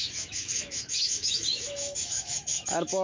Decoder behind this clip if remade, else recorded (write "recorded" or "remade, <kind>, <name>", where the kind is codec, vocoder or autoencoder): remade, autoencoder, DAC-VAE